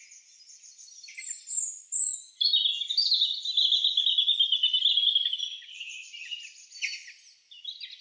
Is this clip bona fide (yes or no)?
yes